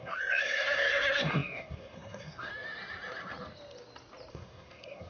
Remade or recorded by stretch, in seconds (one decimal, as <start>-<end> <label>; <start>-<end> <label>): 0.0-2.5 remade; 2.5-4.3 recorded; 4.3-5.1 remade